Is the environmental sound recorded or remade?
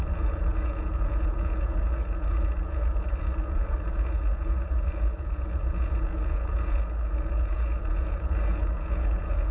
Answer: remade